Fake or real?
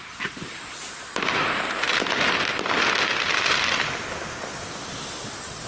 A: real